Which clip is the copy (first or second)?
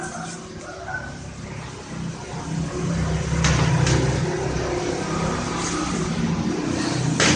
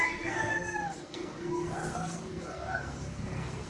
second